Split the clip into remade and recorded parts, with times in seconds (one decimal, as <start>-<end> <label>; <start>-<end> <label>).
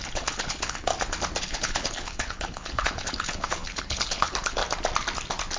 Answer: 0.0-0.9 remade; 0.9-1.4 recorded; 1.4-4.6 remade; 4.6-5.6 recorded